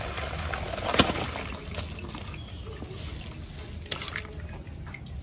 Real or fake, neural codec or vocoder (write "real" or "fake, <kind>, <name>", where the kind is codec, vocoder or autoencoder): real